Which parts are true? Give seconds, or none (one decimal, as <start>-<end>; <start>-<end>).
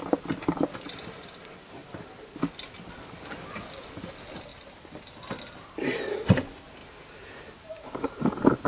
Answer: 0.0-8.7